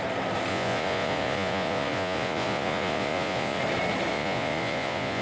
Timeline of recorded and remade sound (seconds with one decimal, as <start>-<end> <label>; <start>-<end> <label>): 0.0-0.5 recorded; 0.5-3.6 remade; 3.6-4.1 recorded; 4.1-5.2 remade